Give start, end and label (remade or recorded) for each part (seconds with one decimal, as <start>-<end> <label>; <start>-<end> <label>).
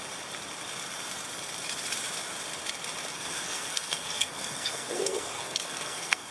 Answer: 0.0-3.1 recorded; 3.1-6.3 remade